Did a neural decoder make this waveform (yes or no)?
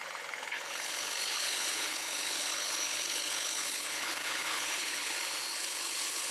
yes